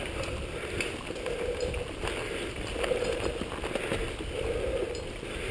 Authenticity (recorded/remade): recorded